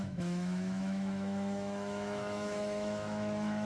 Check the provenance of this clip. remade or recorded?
remade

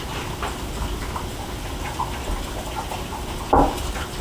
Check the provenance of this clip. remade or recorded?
recorded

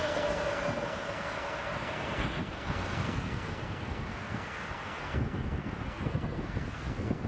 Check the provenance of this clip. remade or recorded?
remade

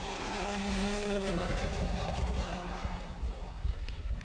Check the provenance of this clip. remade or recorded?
remade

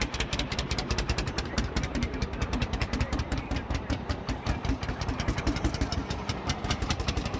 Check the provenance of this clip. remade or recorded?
remade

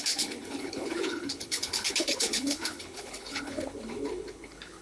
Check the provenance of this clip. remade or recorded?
remade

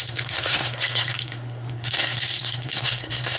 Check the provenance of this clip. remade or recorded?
remade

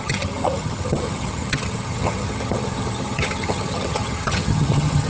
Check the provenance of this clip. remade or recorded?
remade